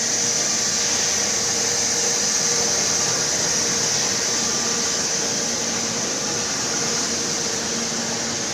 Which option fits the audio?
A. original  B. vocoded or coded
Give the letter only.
A